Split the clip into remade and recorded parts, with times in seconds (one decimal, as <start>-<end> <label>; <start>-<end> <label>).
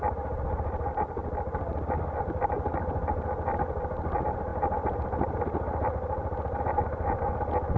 0.0-4.5 recorded; 4.5-5.4 remade; 5.4-7.8 recorded